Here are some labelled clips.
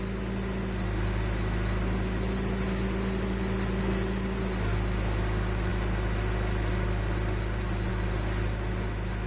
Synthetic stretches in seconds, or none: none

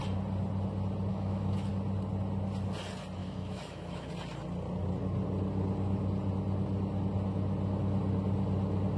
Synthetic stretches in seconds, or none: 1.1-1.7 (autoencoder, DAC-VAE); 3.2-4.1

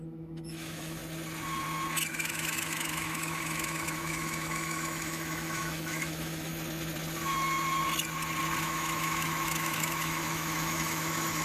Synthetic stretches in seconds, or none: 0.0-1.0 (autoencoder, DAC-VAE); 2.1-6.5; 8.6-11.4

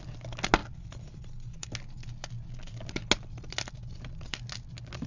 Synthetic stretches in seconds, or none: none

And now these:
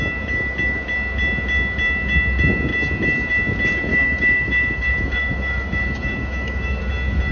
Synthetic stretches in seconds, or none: 3.9-6.8 (autoencoder, DAC-VAE)

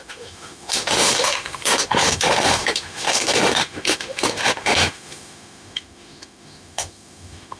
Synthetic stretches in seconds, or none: 0.0-7.6 (autoencoder, DAC-VAE)

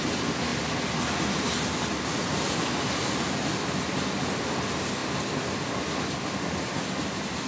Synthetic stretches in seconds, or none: none

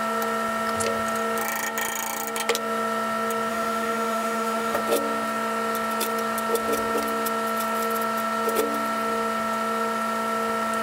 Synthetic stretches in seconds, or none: 3.5-4.8 (autoencoder, DAC-VAE)